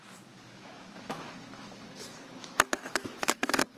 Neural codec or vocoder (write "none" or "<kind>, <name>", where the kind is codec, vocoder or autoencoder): autoencoder, DAC-VAE